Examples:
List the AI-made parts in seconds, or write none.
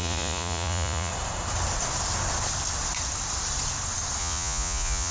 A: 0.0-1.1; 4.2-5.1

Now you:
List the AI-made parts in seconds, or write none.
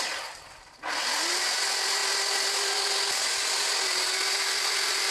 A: none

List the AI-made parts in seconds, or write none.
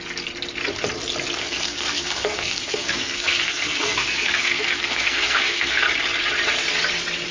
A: 1.4-5.8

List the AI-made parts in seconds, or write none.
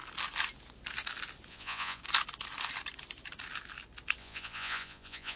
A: 1.5-2.0; 4.2-5.4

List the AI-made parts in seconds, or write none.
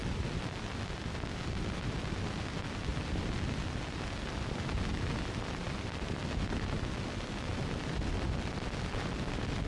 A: 0.0-0.7; 2.9-6.9; 7.5-9.7